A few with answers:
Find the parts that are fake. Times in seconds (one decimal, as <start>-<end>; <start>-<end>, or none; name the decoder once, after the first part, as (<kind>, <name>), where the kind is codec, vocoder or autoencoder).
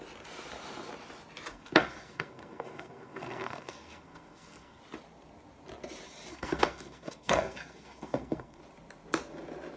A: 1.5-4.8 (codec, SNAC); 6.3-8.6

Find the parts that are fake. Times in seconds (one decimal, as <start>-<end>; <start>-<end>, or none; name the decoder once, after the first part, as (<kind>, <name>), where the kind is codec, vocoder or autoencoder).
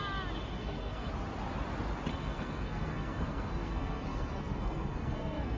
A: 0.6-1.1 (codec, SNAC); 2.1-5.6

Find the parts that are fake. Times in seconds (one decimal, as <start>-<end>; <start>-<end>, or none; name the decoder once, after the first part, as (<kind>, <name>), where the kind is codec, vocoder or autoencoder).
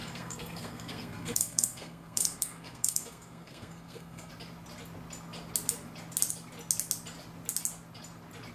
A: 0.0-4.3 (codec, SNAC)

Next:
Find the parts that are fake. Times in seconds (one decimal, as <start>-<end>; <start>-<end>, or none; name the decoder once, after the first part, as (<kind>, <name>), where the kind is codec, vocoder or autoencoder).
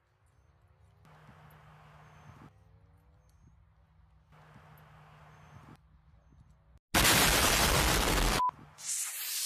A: none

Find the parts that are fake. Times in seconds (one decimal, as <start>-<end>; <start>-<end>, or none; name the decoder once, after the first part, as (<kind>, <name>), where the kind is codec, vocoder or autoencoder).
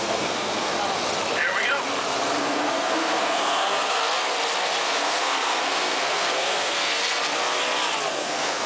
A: 0.0-0.7 (codec, SNAC); 2.4-4.0; 4.8-7.0; 8.1-8.7